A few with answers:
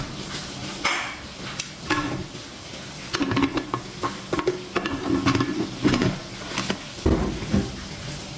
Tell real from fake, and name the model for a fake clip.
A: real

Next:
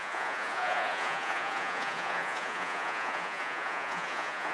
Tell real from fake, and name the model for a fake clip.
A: fake, vocoder, Vocos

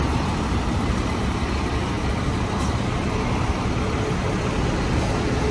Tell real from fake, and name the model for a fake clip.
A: real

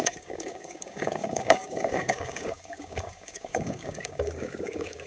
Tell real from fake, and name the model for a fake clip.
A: fake, codec, DAC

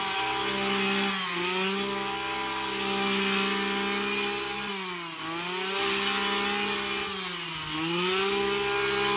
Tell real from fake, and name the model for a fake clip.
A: real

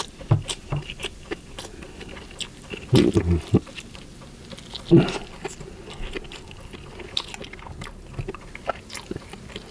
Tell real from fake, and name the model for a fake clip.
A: real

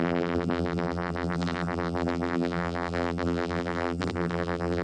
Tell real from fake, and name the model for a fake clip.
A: fake, vocoder, BigVGAN v2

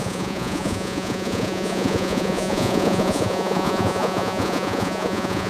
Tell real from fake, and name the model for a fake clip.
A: fake, vocoder, Vocos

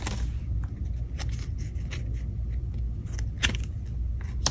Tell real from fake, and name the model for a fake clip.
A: real